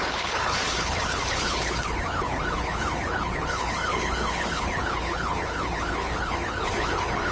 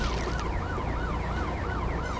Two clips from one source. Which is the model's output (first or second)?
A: first